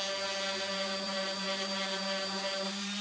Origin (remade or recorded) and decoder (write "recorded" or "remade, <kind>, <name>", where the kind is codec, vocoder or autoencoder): remade, vocoder, BigVGAN v2